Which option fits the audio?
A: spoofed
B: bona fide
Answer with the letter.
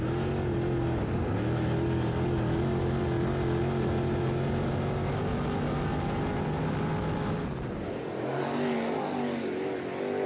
B